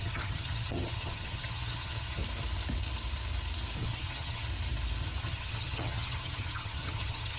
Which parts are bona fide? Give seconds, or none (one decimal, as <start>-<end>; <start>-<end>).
2.2-3.8; 4.5-5.2